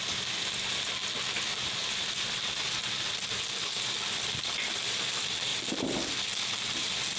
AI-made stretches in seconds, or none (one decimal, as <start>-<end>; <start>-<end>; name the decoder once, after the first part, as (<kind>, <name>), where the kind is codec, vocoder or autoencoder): 0.0-1.0 (vocoder, BigVGAN v2); 3.8-7.2